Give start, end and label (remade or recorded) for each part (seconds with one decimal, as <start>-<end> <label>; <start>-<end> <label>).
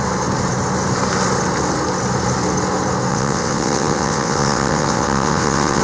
0.0-3.1 recorded; 3.1-5.8 remade